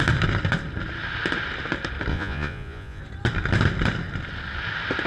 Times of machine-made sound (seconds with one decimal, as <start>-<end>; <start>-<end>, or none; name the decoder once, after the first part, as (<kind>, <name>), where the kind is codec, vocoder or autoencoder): 2.1-3.0 (vocoder, Vocos)